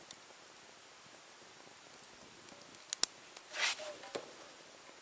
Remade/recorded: recorded